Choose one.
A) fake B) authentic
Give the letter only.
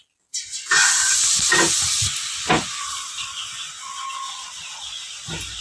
B